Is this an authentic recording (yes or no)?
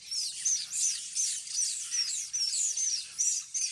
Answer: yes